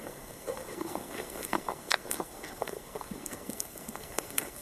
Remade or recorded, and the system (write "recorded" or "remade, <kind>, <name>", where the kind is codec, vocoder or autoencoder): remade, codec, SNAC